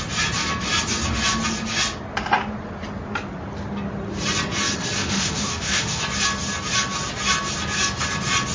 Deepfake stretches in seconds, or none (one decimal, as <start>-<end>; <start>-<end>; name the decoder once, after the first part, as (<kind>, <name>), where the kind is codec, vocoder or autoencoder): 5.0-6.0 (autoencoder, DAC-VAE)